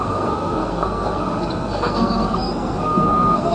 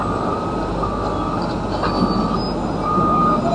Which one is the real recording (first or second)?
second